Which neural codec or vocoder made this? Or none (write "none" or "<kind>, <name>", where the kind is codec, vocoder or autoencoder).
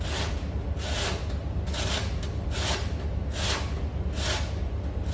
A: none